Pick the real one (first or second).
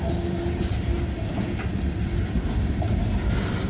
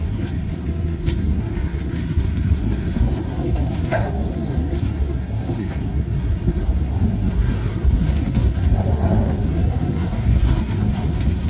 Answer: first